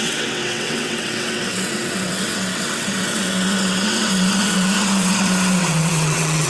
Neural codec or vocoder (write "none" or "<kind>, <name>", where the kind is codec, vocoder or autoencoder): vocoder, WaveNeXt